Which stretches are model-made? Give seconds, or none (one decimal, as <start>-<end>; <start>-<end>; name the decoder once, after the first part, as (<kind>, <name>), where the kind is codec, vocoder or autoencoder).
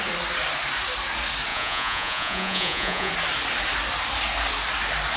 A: 1.5-3.1 (vocoder, Vocos)